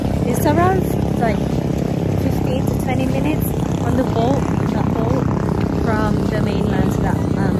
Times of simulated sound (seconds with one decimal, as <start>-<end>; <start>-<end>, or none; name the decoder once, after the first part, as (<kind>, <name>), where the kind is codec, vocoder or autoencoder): none